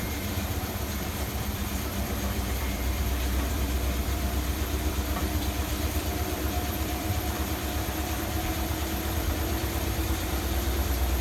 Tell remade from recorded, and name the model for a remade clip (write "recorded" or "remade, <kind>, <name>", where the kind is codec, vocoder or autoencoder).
remade, vocoder, BigVGAN v2